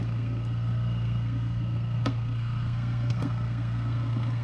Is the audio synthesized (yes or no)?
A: yes